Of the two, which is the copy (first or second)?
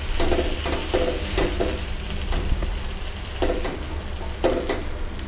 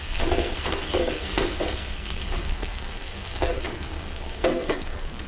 second